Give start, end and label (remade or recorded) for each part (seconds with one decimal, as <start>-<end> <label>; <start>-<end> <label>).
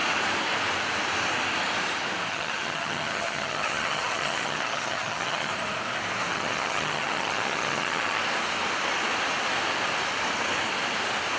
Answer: 0.0-2.3 recorded; 2.3-5.5 remade; 5.5-6.3 recorded; 6.3-8.2 remade; 8.2-11.4 recorded